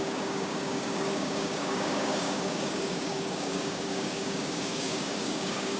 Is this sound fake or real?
fake